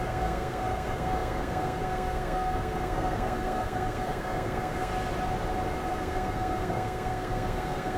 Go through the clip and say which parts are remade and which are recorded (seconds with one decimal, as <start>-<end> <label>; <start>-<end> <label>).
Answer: 0.0-4.9 remade; 4.9-5.9 recorded; 5.9-8.0 remade